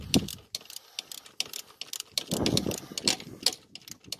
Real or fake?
real